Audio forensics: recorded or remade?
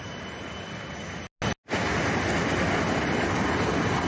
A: recorded